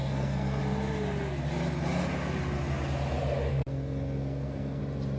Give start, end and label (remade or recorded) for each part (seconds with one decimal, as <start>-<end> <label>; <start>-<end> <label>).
0.0-0.6 remade; 0.6-3.5 recorded; 3.5-4.8 remade; 4.8-5.2 recorded